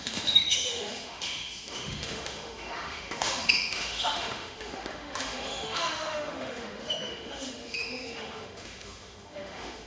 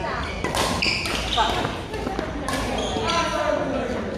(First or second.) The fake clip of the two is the first